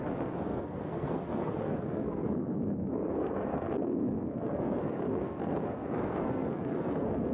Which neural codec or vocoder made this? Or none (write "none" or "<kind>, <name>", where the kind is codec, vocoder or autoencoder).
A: codec, SNAC